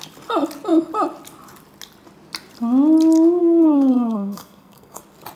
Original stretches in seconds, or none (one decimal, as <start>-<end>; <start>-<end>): 0.0-3.4; 5.0-5.4